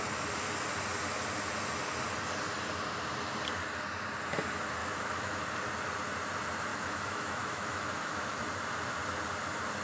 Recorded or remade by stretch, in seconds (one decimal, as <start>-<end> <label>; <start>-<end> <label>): 0.0-4.8 recorded; 4.8-5.4 remade; 5.4-6.7 recorded; 6.7-8.4 remade; 8.4-9.8 recorded